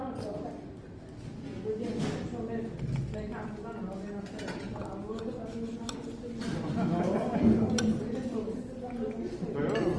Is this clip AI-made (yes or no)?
no